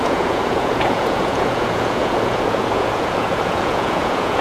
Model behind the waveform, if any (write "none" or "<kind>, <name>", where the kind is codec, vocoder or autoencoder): vocoder, Vocos